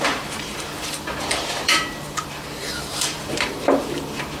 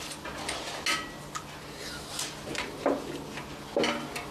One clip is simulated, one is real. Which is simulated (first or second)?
first